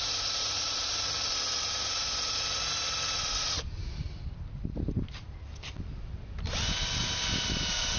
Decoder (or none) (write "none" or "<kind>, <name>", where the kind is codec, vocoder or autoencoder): none